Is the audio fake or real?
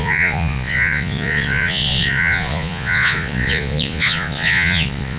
fake